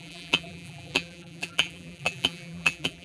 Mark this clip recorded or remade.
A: remade